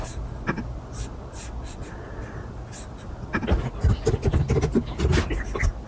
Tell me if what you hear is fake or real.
real